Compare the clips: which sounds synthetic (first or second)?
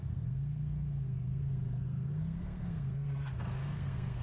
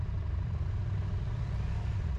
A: first